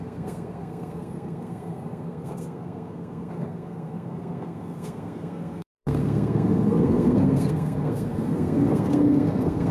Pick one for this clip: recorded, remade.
remade